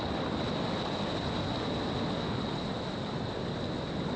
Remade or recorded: recorded